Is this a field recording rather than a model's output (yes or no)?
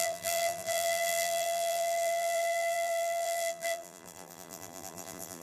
no